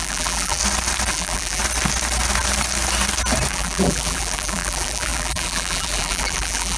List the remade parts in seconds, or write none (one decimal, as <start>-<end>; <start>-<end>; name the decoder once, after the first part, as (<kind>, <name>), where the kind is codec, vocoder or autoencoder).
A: 0.0-0.6 (vocoder, BigVGAN v2); 1.1-1.6; 3.5-6.8